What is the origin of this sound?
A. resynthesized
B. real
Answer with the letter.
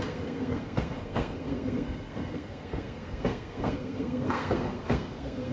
A